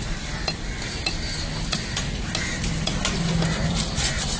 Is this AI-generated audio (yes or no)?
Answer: no